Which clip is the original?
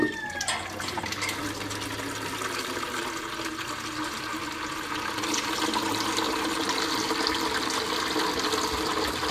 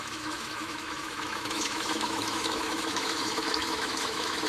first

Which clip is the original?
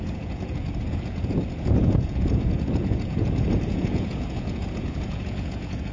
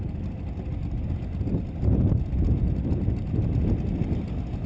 second